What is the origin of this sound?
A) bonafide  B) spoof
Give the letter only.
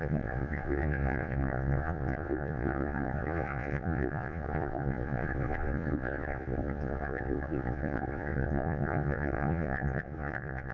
B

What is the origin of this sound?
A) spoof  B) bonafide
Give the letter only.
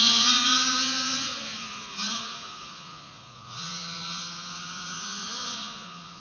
A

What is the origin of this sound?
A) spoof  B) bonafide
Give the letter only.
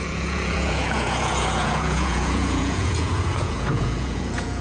A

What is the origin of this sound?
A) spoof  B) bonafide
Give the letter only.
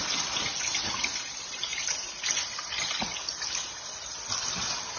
B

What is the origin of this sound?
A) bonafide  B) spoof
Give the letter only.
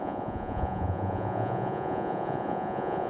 B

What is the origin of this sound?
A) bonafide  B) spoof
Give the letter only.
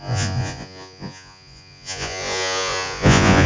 B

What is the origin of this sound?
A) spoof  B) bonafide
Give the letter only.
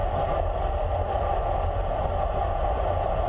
B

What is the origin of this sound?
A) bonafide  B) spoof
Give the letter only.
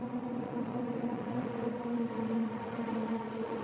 B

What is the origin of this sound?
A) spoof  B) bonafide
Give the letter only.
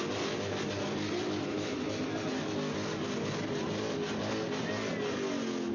B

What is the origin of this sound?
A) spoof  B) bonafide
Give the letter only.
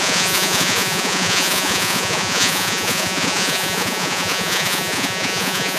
A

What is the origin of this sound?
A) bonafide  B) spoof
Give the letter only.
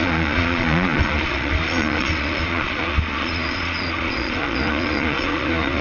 B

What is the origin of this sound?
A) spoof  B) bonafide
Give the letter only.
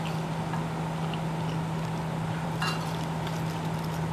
B